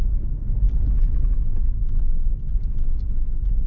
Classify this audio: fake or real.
real